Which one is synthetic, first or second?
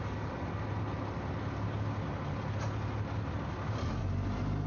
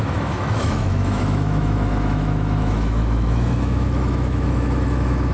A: second